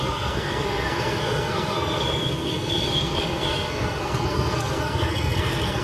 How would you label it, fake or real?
fake